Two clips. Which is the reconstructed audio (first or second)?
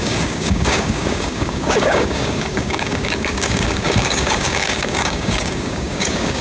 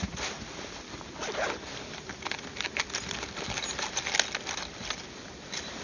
first